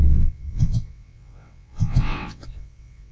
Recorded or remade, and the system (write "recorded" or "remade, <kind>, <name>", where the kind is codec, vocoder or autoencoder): remade, vocoder, WaveNeXt